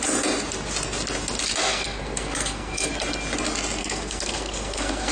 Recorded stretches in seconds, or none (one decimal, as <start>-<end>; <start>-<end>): 0.0-1.5; 2.9-3.8